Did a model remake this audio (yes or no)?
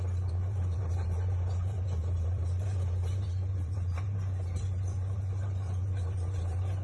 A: yes